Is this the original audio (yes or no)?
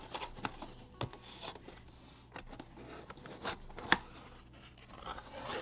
yes